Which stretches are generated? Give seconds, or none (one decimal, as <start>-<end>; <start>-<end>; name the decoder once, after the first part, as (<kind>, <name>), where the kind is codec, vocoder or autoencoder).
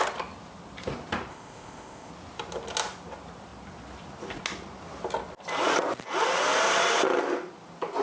1.3-2.1 (codec, ZipCodec)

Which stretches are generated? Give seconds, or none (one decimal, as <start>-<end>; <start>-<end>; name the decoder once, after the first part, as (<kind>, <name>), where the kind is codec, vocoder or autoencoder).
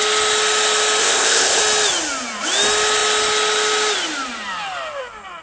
1.0-1.6 (codec, ZipCodec)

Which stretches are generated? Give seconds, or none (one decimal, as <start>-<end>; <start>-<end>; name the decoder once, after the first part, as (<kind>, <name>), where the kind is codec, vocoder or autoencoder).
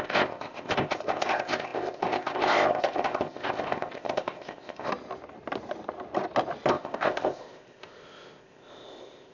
0.0-4.9 (codec, ZipCodec); 6.7-9.3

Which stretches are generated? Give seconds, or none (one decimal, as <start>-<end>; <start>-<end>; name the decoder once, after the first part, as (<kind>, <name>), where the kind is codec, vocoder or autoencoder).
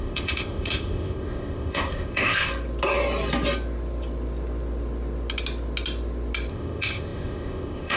0.0-2.5 (codec, ZipCodec); 6.5-8.0